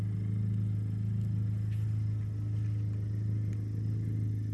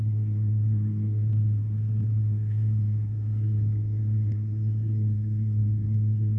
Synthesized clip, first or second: second